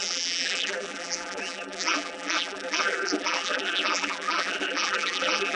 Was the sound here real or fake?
fake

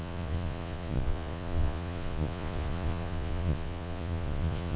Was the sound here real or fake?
fake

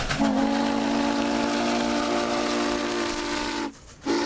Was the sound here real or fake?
real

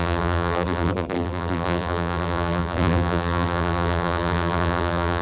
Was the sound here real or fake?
fake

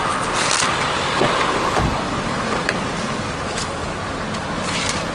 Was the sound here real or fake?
real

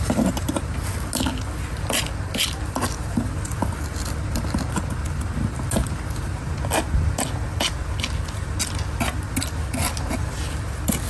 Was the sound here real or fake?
real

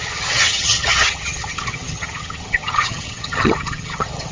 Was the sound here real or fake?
fake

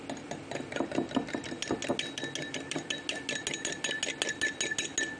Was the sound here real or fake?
real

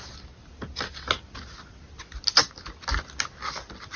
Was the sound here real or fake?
real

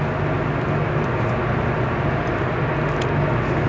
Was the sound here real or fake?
real